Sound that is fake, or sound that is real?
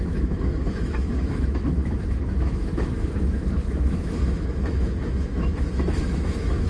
fake